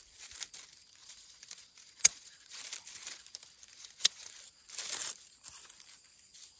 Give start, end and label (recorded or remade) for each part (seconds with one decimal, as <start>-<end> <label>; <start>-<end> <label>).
0.0-1.0 recorded; 1.0-2.6 remade; 2.6-3.7 recorded; 3.7-4.3 remade; 4.3-6.6 recorded